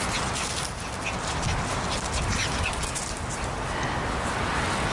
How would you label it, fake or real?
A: real